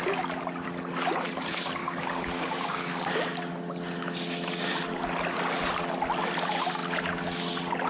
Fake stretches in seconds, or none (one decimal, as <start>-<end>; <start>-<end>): 1.8-3.0